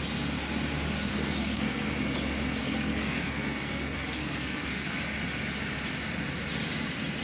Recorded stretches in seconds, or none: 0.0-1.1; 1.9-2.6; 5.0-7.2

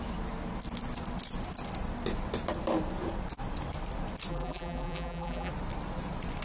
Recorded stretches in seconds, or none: 0.0-4.3; 5.5-6.4

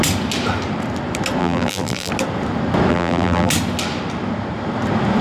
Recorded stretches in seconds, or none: 0.0-1.4; 2.1-2.9; 3.5-5.2

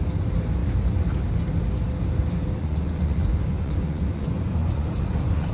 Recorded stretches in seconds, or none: 0.0-2.6

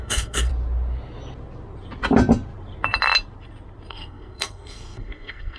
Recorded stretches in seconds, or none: 0.5-3.9

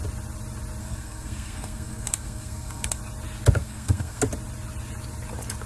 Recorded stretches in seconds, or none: 0.0-0.8; 3.0-3.6; 4.2-5.7

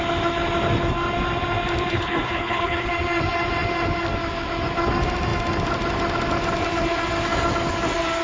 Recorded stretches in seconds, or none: 0.0-1.9; 2.9-8.2